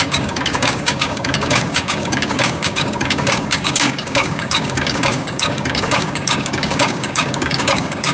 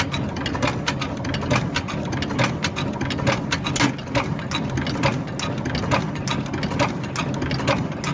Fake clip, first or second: first